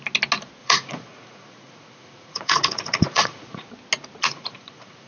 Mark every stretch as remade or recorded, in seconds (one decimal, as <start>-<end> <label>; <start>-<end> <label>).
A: 0.0-0.6 recorded; 0.6-3.7 remade; 3.7-4.2 recorded; 4.2-5.1 remade